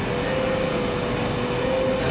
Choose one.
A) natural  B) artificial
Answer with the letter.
A